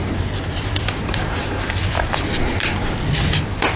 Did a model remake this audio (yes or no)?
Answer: yes